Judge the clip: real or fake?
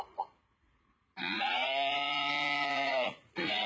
fake